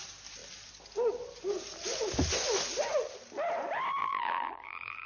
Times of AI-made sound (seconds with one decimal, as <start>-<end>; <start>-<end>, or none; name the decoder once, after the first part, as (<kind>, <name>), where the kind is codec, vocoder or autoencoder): 4.0-5.1 (vocoder, BigVGAN v2)

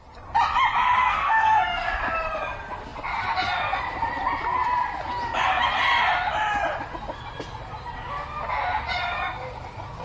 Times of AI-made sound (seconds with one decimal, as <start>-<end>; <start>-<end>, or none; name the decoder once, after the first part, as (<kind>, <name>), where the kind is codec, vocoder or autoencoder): 1.0-2.0 (codec, SNAC)

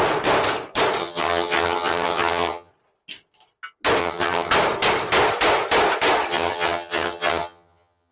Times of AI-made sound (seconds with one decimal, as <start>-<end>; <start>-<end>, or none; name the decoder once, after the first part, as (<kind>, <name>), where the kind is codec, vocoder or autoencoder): 1.0-2.7 (vocoder, HiFi-GAN); 4.0-4.5; 6.3-8.1